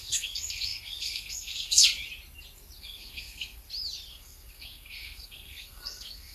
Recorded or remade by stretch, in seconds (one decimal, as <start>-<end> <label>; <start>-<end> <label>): 0.0-1.8 remade; 1.8-2.8 recorded; 2.8-3.6 remade; 3.6-4.1 recorded; 4.1-6.3 remade